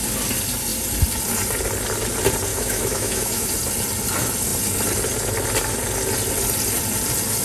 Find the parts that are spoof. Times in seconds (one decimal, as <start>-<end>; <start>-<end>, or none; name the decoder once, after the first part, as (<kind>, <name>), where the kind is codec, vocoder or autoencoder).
2.5-3.5 (autoencoder, DAC-VAE)